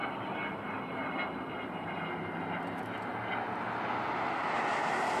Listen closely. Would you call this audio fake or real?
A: real